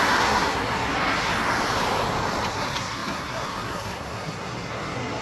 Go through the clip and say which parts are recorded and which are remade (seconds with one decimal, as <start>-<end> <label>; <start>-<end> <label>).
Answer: 0.0-1.3 remade; 1.3-2.5 recorded; 2.5-5.2 remade